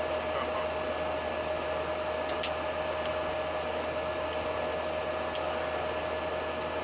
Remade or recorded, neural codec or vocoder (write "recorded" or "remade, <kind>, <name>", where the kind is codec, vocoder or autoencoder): recorded